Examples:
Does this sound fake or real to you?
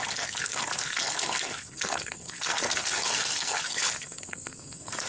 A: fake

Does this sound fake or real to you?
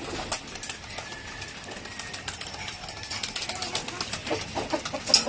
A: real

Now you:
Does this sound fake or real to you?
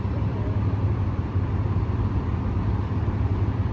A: fake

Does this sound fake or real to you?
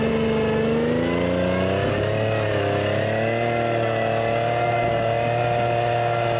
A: real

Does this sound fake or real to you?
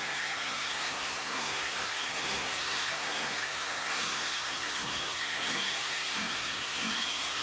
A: fake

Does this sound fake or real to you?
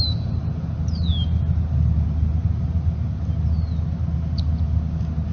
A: real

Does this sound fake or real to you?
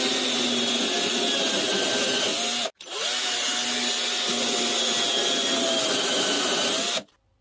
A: real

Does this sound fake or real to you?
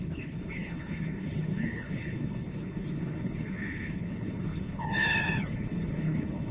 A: fake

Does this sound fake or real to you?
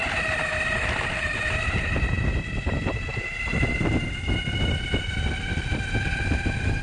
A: real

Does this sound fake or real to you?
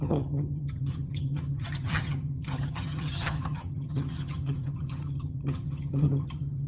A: fake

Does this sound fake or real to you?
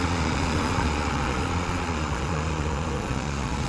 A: fake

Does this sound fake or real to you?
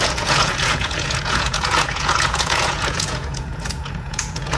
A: fake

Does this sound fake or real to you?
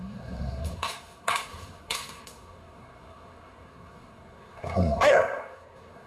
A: fake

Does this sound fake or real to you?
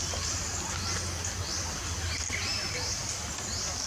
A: real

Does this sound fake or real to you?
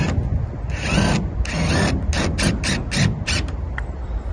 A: real